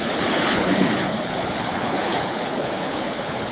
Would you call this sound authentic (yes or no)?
no